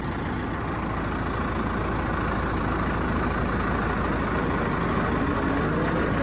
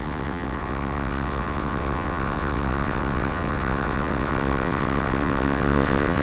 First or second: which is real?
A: first